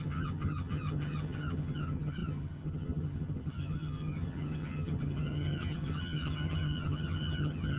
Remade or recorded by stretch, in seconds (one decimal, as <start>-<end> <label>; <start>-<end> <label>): 0.0-7.8 remade